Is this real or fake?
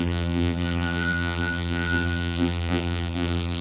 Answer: fake